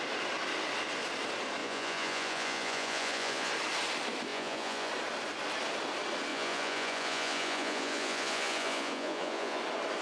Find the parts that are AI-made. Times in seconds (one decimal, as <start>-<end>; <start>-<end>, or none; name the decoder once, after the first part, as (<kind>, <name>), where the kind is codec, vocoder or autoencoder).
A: 1.6-3.5 (vocoder, Vocos); 4.3-4.9; 6.3-9.6